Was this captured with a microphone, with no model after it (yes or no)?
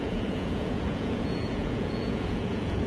no